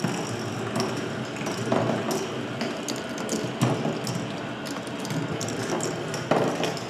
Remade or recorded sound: recorded